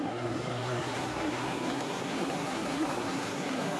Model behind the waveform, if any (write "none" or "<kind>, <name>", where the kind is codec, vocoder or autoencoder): codec, SNAC